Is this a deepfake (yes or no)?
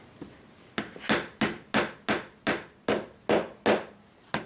no